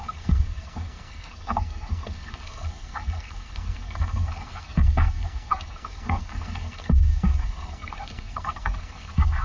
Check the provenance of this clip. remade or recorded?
remade